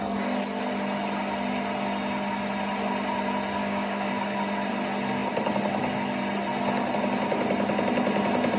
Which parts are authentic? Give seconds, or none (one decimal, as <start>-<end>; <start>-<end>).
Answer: 0.0-3.6; 4.1-8.6